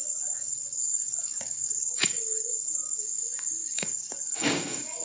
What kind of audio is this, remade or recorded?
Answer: remade